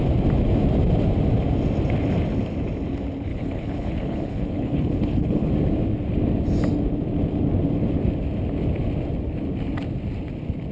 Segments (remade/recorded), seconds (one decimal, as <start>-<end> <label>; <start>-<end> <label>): 0.0-3.3 recorded; 3.3-5.5 remade; 5.5-10.7 recorded